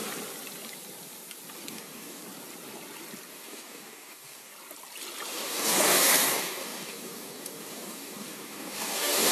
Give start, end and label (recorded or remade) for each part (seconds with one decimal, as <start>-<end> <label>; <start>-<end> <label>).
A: 0.0-1.7 recorded; 1.7-2.2 remade; 2.2-3.3 recorded; 3.3-4.5 remade; 4.5-5.3 recorded; 5.3-9.3 remade